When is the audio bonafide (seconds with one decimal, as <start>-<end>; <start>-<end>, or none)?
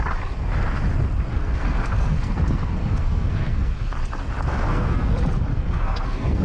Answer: 0.0-1.3; 3.7-4.5; 5.1-5.5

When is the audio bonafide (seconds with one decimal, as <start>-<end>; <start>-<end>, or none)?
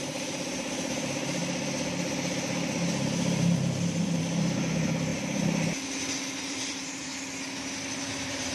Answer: 1.4-4.2; 5.1-6.4; 7.1-8.0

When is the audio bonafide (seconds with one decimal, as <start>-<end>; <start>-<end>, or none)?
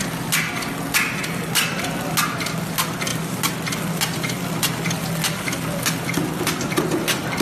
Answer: 0.0-7.4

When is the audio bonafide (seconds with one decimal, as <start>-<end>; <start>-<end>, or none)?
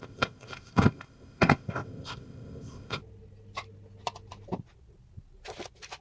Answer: 3.0-6.0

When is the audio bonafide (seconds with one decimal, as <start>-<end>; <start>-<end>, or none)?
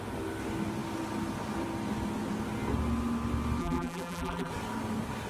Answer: 0.0-3.6; 4.5-5.3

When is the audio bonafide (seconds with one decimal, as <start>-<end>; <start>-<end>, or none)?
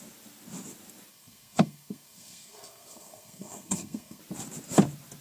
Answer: 0.0-1.1; 4.2-5.2